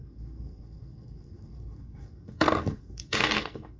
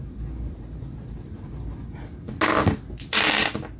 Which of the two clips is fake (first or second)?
first